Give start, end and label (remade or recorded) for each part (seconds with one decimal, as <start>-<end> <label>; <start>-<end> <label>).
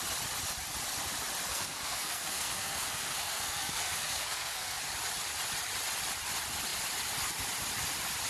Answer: 0.0-1.5 recorded; 1.5-4.8 remade; 4.8-8.3 recorded